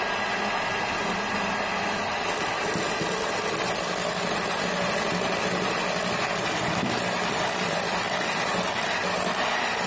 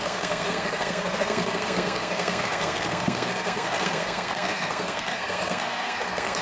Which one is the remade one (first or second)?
second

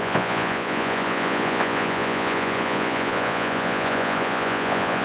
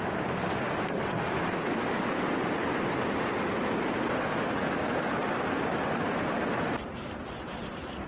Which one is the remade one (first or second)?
first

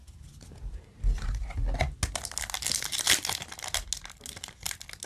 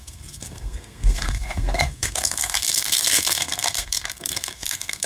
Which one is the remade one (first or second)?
second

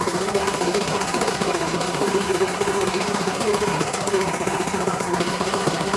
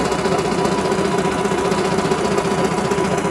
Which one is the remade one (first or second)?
first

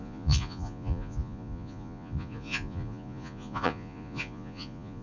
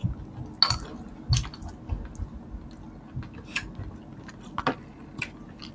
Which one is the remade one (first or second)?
first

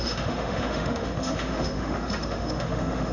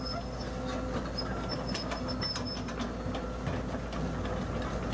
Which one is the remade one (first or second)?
first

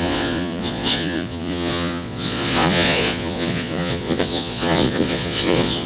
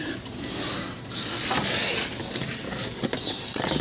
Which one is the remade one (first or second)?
first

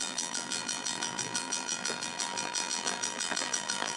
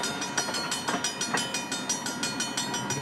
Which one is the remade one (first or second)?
first